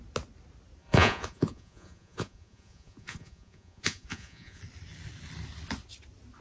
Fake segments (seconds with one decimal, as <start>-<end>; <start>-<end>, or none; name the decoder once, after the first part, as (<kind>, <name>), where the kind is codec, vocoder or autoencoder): 0.8-4.6 (vocoder, Vocos)